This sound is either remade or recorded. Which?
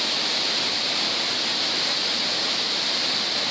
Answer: recorded